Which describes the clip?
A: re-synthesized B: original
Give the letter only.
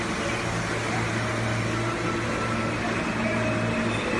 B